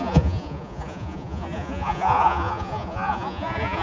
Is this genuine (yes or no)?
no